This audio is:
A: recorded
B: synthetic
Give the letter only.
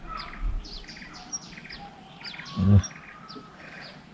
A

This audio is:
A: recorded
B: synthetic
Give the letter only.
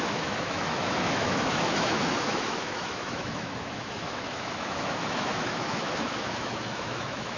B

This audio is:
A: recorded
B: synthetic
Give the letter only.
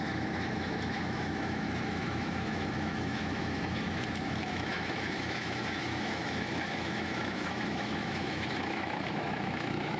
B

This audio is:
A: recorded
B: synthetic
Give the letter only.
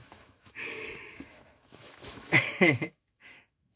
B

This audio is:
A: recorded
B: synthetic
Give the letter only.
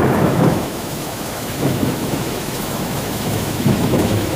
B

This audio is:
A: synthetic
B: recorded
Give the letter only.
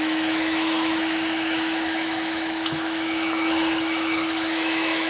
A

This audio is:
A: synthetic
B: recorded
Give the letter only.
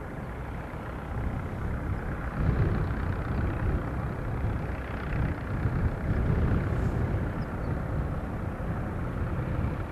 B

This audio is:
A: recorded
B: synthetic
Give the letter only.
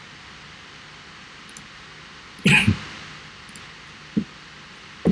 A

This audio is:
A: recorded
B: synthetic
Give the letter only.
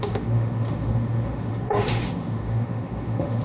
B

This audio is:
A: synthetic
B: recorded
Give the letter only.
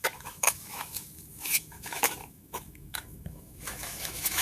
A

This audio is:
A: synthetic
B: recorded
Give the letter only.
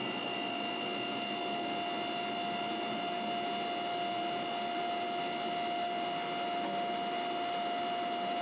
B